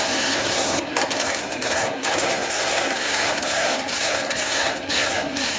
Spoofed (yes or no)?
yes